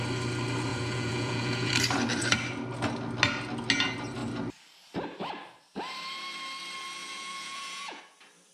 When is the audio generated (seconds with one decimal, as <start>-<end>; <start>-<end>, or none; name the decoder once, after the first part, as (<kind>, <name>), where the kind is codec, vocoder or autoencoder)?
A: 0.7-1.7 (vocoder, Vocos); 7.0-8.0